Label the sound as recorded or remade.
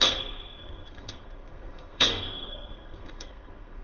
remade